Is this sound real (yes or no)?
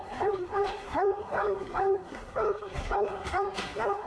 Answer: no